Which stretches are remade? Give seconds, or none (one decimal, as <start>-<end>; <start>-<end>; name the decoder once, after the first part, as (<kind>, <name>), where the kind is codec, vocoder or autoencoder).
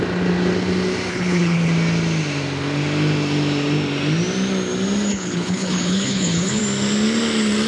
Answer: 1.1-1.7 (codec, HILCodec); 5.1-6.6